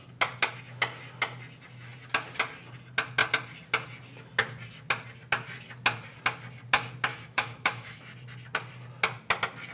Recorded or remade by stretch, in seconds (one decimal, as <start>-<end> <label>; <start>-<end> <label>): 0.0-7.1 recorded; 7.1-8.0 remade; 8.0-9.7 recorded